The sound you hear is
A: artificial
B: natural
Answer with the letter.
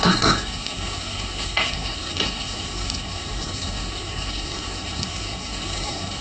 A